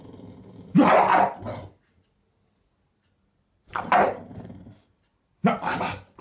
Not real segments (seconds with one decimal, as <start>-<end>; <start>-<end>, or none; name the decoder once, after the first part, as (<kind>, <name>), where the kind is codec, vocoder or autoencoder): 3.7-5.3 (vocoder, BigVGAN v2)